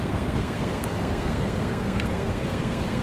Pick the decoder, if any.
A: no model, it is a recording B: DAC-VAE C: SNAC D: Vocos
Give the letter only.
C